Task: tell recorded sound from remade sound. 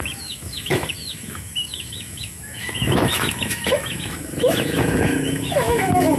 remade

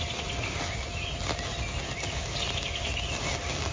recorded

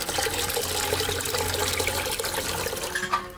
recorded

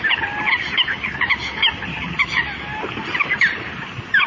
recorded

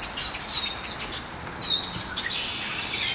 recorded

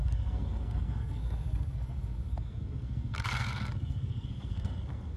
remade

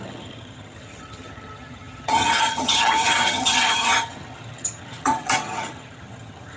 remade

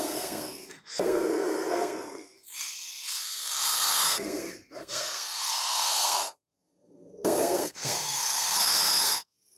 remade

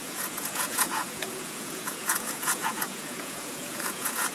remade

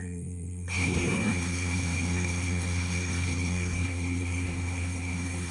remade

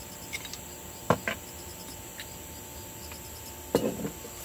recorded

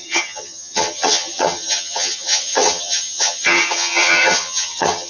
remade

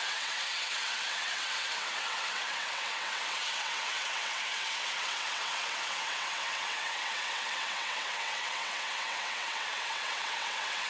remade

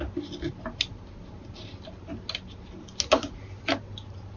recorded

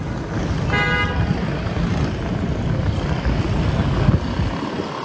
recorded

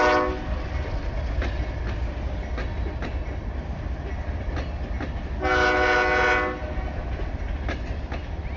recorded